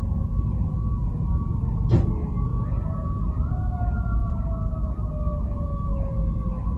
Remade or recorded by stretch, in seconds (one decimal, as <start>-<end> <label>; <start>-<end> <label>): 0.0-6.8 recorded